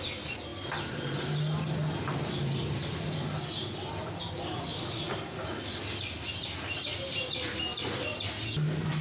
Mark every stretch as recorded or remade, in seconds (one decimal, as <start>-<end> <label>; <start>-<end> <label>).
0.0-9.0 recorded